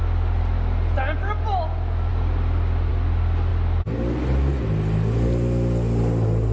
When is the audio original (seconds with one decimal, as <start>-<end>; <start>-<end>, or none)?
0.0-6.5